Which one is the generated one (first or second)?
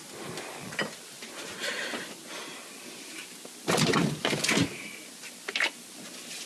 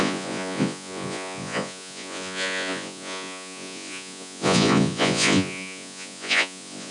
second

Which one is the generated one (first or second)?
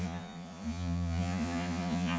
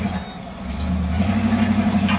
first